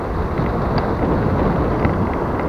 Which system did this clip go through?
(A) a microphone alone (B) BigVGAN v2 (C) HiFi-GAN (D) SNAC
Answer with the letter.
A